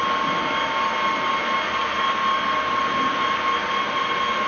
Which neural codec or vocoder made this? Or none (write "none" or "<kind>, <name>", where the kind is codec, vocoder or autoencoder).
none